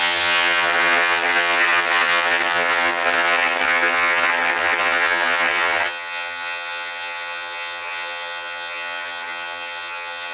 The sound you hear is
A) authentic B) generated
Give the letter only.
B